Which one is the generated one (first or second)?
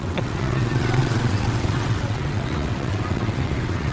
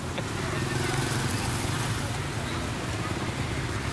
first